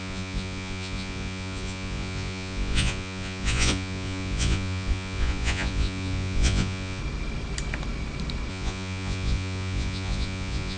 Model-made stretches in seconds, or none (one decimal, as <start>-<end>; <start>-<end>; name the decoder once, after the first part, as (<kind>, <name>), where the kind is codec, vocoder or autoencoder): 0.0-7.0 (vocoder, Vocos); 8.5-10.8